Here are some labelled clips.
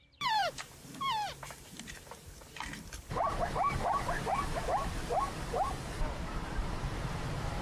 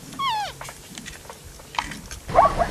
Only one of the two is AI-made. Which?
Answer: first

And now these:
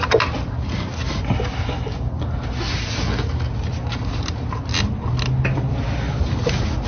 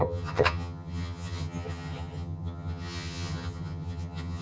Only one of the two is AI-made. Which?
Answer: second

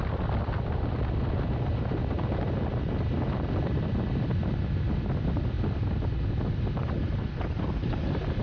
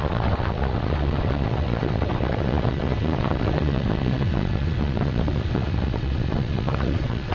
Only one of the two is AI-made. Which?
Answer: second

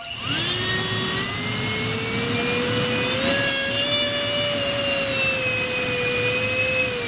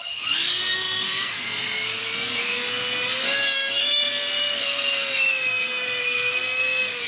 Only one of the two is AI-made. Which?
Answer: second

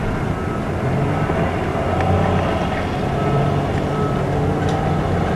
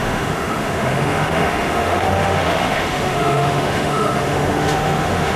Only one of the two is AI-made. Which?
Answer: second